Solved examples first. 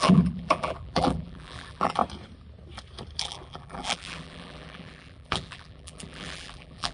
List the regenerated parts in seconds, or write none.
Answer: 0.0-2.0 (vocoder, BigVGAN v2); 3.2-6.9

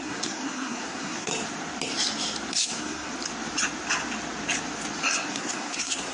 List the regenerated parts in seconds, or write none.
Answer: 0.0-1.3 (codec, SNAC); 2.5-3.1; 5.3-6.1

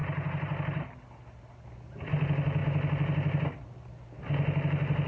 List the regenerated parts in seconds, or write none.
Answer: none

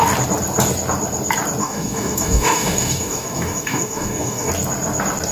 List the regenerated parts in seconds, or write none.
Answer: 1.6-4.5 (codec, DAC)

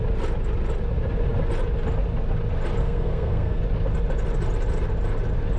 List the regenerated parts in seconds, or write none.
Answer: 2.8-3.6 (codec, SNAC)

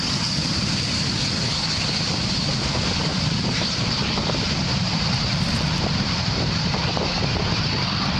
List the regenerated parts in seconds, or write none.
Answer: 3.1-7.2 (vocoder, BigVGAN v2)

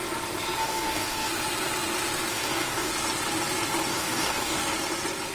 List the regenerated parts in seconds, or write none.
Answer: 0.6-1.3 (codec, DAC); 2.3-2.9; 3.9-4.6

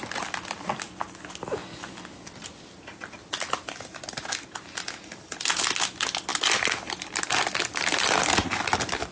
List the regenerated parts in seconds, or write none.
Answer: none